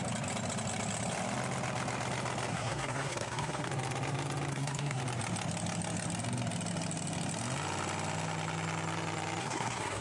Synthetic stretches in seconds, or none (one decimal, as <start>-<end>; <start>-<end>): 2.5-3.7; 4.5-5.0; 9.4-10.0